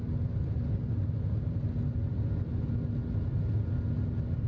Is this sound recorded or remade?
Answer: recorded